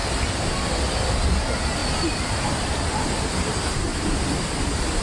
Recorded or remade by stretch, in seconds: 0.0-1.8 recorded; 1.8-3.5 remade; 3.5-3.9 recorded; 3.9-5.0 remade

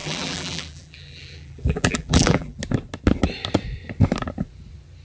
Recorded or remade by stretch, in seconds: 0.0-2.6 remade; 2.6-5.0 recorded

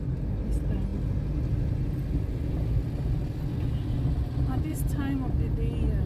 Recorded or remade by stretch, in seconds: 0.0-6.1 recorded

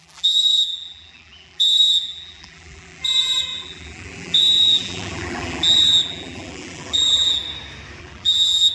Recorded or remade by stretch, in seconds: 0.0-7.4 remade; 7.4-8.0 recorded; 8.0-8.7 remade

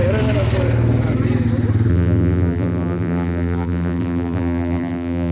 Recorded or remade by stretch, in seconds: 0.0-1.9 recorded; 1.9-5.3 remade

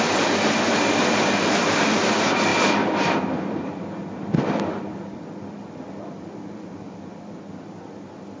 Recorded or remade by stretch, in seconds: 0.0-2.5 recorded; 2.5-7.4 remade; 7.4-8.4 recorded

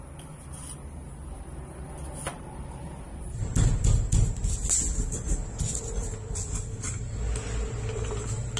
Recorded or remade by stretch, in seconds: 0.0-2.3 recorded; 2.3-2.8 remade; 2.8-8.6 recorded

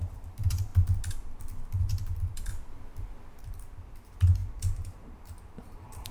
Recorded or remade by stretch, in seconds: 0.0-0.7 remade; 0.7-1.8 recorded; 1.8-2.5 remade; 2.5-3.4 recorded; 3.4-6.1 remade